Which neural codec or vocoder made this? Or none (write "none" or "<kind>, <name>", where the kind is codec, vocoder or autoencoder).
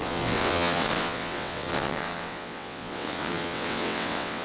vocoder, WaveNeXt